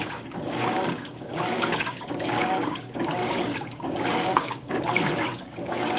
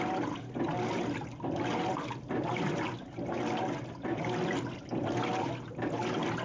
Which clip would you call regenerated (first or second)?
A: first